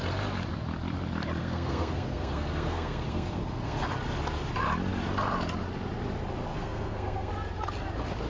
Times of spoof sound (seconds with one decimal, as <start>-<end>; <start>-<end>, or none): 1.4-3.9; 6.5-7.3